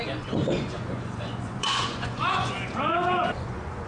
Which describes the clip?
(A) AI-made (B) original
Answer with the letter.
A